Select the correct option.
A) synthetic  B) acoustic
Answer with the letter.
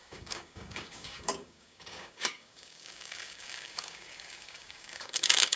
A